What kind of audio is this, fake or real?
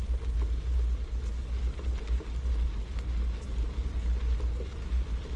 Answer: real